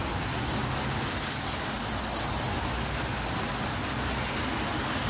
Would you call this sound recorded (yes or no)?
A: yes